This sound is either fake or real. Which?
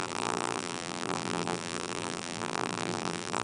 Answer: fake